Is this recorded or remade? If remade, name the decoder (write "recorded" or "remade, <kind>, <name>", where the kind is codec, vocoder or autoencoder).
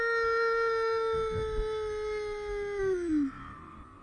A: recorded